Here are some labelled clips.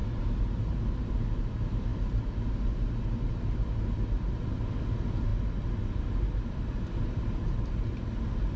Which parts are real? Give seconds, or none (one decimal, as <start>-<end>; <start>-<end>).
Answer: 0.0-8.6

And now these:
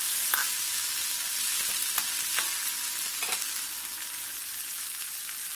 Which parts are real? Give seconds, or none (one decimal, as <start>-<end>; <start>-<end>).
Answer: 0.0-5.5

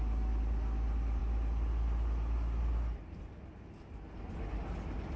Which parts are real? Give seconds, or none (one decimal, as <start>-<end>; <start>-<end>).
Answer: 0.0-5.2